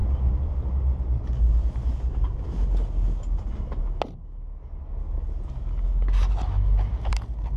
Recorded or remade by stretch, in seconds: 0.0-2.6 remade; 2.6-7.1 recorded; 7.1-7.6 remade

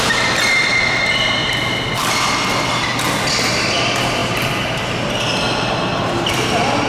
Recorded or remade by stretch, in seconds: 0.0-6.9 recorded

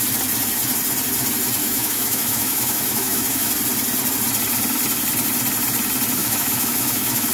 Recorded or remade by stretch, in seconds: 0.0-1.6 recorded; 1.6-3.5 remade; 3.5-6.2 recorded; 6.2-7.3 remade

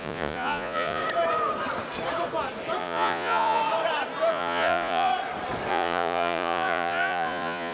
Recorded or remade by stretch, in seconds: 0.0-1.0 remade; 1.0-2.8 recorded; 2.8-3.6 remade; 3.6-4.3 recorded; 4.3-5.1 remade; 5.1-5.7 recorded; 5.7-7.7 remade

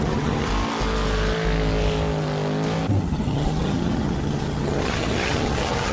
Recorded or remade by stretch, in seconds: 0.0-0.5 remade; 0.5-3.0 recorded; 3.0-5.9 remade